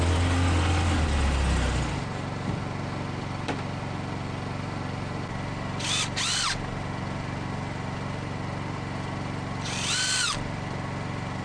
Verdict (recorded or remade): recorded